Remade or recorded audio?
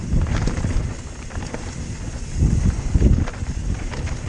recorded